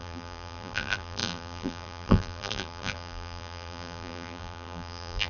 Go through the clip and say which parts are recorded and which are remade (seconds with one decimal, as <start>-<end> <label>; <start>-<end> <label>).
0.0-5.3 remade